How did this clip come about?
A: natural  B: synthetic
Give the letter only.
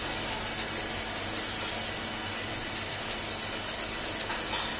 A